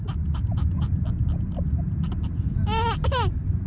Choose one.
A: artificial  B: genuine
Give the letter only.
B